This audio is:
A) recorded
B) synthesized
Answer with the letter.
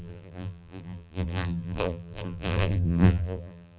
B